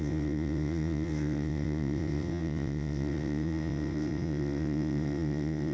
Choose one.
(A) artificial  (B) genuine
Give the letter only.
A